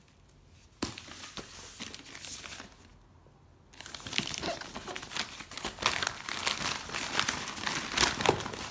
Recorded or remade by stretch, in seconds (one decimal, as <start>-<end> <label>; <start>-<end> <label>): 0.0-8.7 recorded